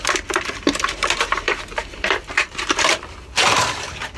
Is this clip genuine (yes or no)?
no